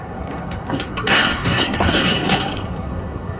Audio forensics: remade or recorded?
remade